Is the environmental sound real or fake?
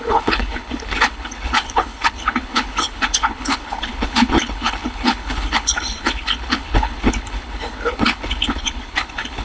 fake